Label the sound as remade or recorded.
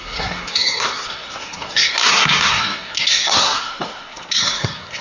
remade